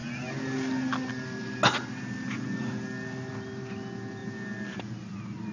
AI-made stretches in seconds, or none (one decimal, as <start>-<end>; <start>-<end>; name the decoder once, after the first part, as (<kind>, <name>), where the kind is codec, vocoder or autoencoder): none